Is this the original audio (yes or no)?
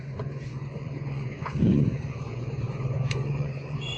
no